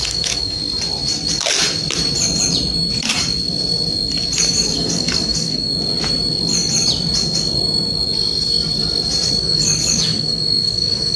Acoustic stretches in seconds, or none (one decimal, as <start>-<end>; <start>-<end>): 0.6-4.4; 5.7-9.4